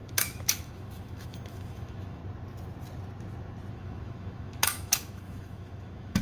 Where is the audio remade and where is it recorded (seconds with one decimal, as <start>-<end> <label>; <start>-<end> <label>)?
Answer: 0.0-2.2 remade; 2.2-3.7 recorded; 3.7-6.2 remade